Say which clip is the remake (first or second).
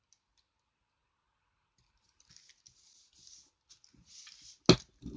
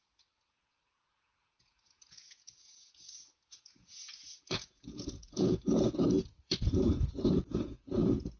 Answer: second